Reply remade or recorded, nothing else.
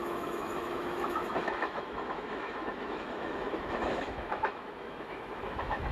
remade